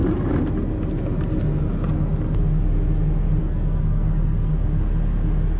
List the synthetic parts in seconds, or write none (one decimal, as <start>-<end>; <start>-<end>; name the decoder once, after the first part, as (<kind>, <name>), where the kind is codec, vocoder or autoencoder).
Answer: 3.4-4.5 (codec, SNAC)

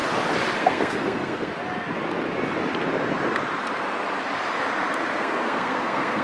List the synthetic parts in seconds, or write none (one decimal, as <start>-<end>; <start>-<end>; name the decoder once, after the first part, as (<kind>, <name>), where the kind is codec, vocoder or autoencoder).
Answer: 0.6-1.5 (codec, SNAC); 5.2-6.2

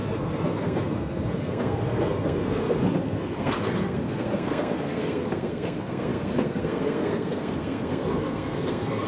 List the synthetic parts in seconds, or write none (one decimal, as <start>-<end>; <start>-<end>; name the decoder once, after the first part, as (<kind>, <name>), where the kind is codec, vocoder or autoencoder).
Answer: 0.0-9.1 (codec, SNAC)